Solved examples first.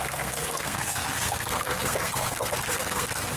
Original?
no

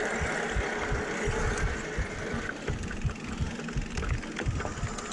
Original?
yes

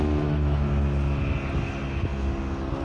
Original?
yes